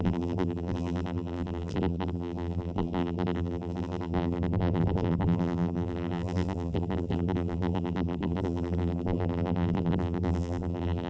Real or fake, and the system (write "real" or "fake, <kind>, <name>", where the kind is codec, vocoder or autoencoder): fake, vocoder, BigVGAN v2